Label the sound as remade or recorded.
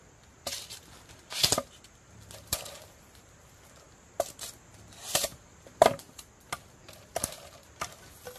recorded